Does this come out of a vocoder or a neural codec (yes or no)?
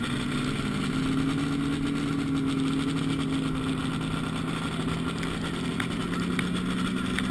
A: no